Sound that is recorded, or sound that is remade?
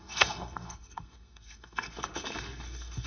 remade